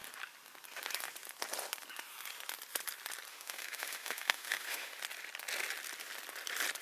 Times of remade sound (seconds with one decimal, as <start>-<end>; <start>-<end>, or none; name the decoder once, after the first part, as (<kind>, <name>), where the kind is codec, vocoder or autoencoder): 3.3-5.0 (autoencoder, DAC-VAE)